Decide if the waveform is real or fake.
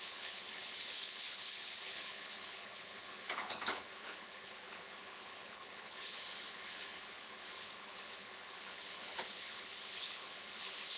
fake